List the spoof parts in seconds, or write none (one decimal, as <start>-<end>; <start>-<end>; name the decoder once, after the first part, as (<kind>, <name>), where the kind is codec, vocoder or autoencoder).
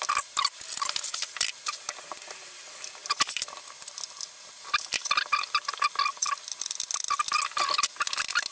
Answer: none